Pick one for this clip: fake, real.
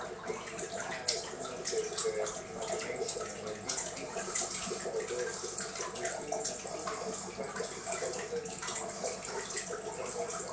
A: real